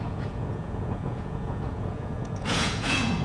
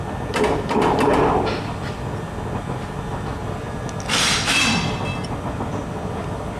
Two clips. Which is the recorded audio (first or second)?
second